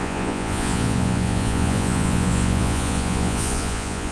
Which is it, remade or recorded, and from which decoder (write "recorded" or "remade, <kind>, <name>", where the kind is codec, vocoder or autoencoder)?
remade, vocoder, Vocos